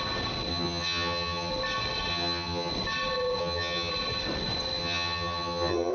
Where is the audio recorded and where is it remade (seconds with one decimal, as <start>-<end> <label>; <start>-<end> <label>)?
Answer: 0.0-0.5 recorded; 0.5-1.5 remade; 1.5-2.1 recorded; 2.1-2.7 remade; 2.7-3.4 recorded; 3.4-3.9 remade; 3.9-4.8 recorded; 4.8-5.9 remade